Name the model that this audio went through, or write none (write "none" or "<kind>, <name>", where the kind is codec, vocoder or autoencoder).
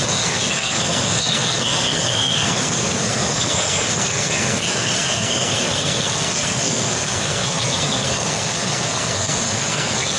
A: codec, SNAC